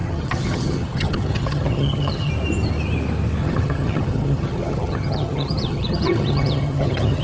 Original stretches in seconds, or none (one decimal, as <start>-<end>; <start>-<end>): 2.3-3.4